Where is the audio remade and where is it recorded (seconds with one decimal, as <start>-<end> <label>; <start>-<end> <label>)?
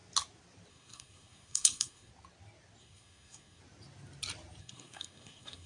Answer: 0.0-0.7 recorded; 0.7-2.1 remade; 2.1-2.8 recorded; 2.8-3.6 remade; 3.6-4.6 recorded; 4.6-5.7 remade